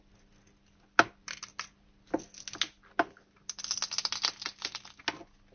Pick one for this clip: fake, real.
real